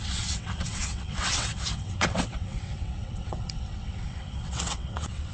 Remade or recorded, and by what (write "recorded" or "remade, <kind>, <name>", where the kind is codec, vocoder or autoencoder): remade, vocoder, WaveNeXt